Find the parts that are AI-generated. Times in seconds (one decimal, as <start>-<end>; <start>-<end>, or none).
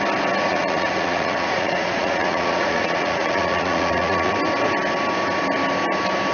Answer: 0.5-4.3